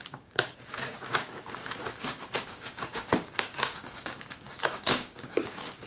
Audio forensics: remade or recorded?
remade